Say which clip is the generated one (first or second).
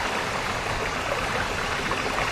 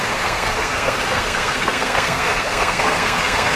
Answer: second